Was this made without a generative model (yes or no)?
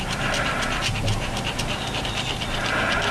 yes